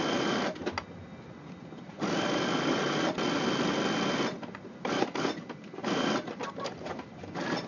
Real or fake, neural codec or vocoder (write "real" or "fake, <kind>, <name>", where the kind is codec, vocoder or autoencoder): real